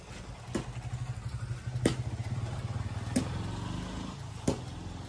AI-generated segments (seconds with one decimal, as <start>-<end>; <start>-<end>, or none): 2.2-2.8